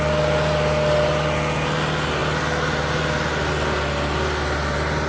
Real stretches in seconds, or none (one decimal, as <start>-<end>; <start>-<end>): 0.0-5.1